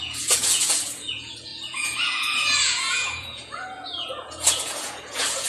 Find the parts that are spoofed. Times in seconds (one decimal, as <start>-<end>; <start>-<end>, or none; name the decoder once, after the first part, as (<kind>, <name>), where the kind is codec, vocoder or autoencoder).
0.0-5.5 (vocoder, Vocos)